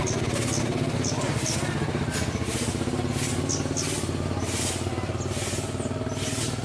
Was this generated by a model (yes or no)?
no